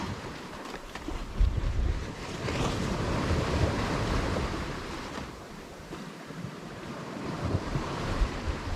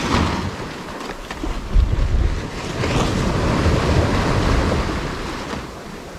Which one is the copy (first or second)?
first